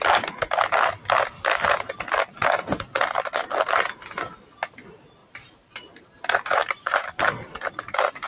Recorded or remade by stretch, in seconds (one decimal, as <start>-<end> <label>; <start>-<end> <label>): 0.0-5.2 recorded; 5.2-7.2 remade; 7.2-8.3 recorded